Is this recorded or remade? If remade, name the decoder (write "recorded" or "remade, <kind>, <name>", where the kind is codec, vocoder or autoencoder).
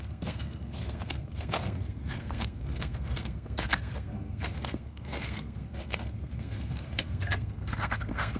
remade, codec, SNAC